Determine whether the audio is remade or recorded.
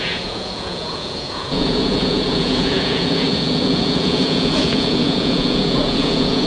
remade